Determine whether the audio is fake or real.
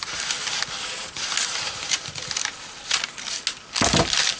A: real